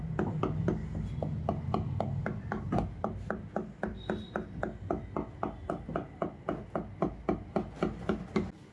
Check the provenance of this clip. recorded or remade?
recorded